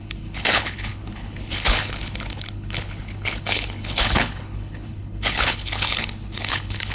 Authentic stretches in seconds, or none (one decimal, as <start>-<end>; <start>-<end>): none